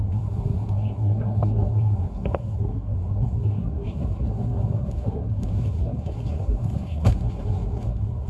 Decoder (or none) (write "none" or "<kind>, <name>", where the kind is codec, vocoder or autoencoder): codec, SNAC